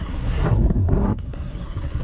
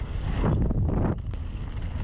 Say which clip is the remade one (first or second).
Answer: first